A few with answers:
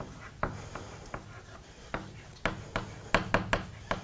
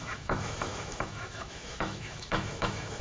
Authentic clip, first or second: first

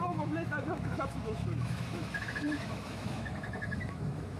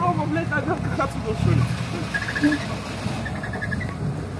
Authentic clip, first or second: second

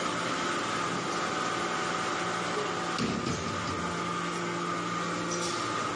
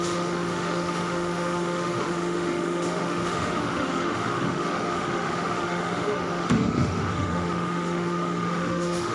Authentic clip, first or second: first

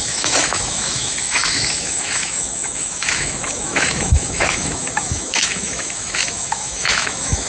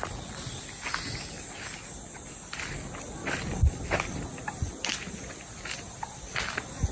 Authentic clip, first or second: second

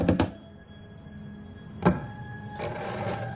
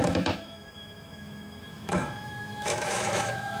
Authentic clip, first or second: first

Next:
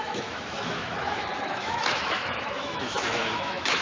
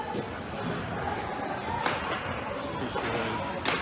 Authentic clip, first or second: second